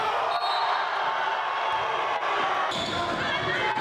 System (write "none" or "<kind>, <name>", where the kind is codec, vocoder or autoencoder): none